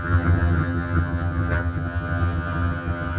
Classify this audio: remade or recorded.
remade